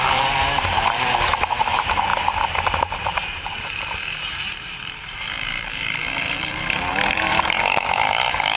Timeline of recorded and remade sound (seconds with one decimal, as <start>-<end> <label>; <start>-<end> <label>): 0.0-2.1 remade; 2.1-2.8 recorded; 2.8-8.6 remade